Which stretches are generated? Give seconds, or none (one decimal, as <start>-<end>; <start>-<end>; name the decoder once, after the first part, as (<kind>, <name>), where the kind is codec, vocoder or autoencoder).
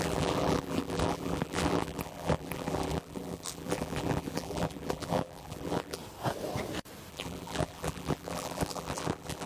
0.0-6.0 (vocoder, BigVGAN v2); 7.1-9.5